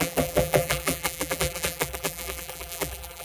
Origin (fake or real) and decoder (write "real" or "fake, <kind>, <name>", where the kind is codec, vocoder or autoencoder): fake, vocoder, BigVGAN v2